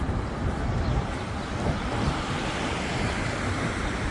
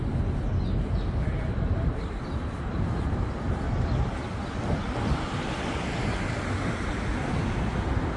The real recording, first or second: second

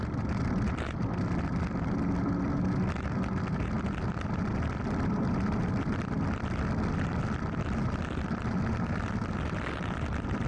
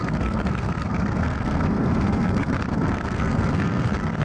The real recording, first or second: first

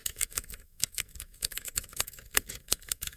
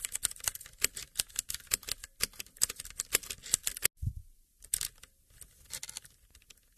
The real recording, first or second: second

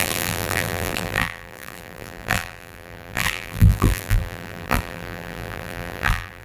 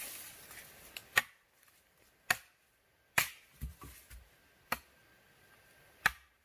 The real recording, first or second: second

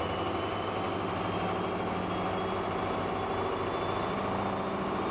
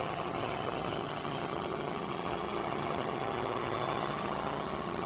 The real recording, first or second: first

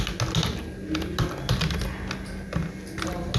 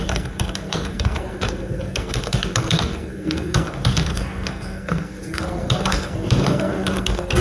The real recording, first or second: first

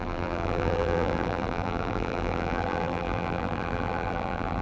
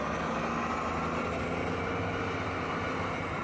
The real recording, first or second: second